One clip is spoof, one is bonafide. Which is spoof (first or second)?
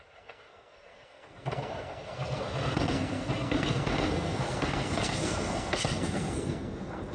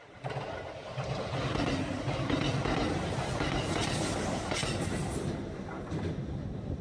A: first